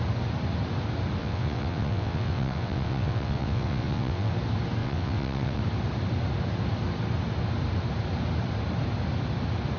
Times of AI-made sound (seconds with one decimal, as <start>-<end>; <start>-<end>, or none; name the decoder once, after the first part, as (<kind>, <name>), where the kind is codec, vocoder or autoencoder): 1.2-4.3 (vocoder, WaveNeXt); 4.8-5.6